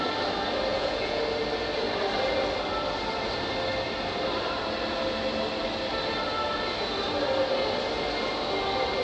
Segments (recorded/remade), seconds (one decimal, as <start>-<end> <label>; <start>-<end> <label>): 0.0-0.7 recorded; 0.7-1.2 remade; 1.2-9.0 recorded